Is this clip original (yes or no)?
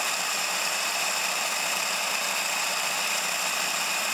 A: no